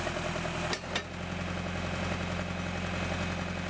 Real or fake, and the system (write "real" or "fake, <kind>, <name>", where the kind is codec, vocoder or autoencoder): real